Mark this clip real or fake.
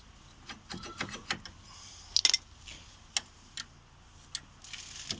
real